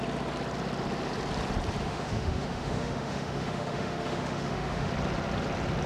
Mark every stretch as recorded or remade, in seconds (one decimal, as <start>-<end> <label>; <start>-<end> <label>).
0.0-1.8 recorded; 1.8-4.9 remade; 4.9-5.9 recorded